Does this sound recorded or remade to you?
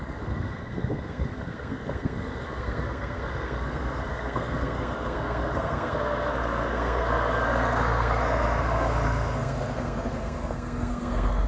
remade